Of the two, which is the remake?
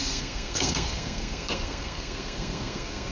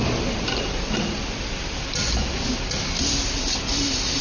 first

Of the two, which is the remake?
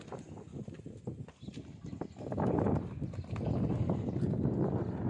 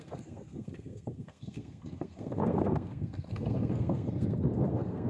second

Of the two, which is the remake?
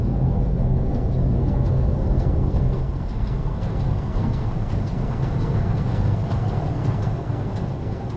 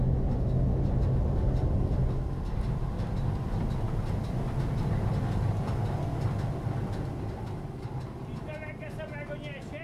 first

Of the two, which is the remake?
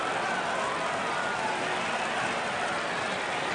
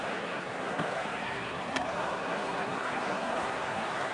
second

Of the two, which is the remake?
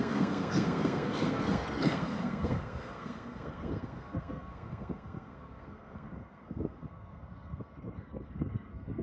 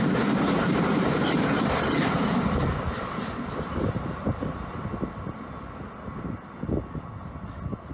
first